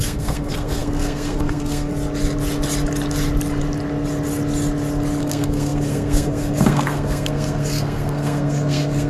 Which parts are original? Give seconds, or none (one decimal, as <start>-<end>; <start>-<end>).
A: 1.9-5.2